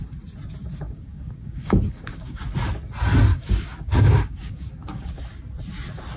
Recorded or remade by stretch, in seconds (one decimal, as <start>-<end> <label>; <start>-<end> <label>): 0.0-0.6 recorded; 0.6-2.4 remade; 2.4-3.3 recorded; 3.3-5.2 remade; 5.2-6.2 recorded

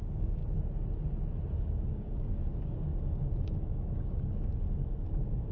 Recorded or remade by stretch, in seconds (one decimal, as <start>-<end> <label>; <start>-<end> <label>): 0.0-0.4 remade; 0.4-1.5 recorded; 1.5-5.5 remade

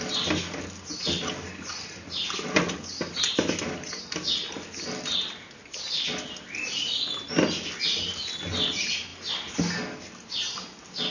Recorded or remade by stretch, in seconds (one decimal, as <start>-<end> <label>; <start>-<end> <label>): 0.0-11.1 recorded

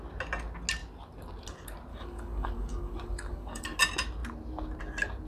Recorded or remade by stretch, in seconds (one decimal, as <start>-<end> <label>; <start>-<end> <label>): 0.0-1.9 recorded; 1.9-3.8 remade; 3.8-5.3 recorded